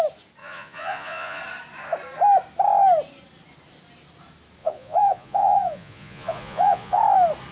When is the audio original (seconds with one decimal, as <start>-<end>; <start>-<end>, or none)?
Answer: 0.0-0.4; 1.4-4.6; 7.0-7.5